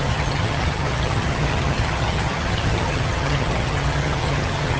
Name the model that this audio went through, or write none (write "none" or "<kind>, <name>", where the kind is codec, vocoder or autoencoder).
vocoder, HiFi-GAN